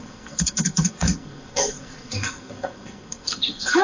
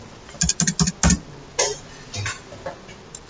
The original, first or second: second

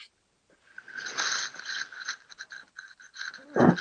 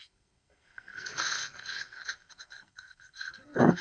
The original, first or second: first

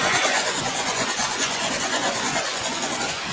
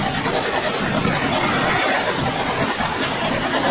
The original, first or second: second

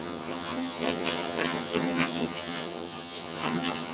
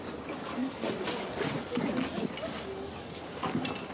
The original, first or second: second